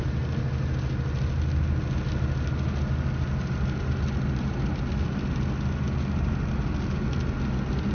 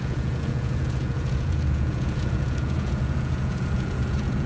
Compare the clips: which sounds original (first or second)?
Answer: first